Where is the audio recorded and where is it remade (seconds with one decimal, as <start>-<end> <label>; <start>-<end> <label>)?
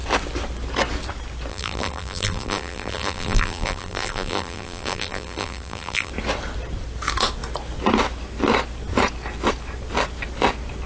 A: 0.0-1.5 recorded; 1.5-6.1 remade; 6.1-10.9 recorded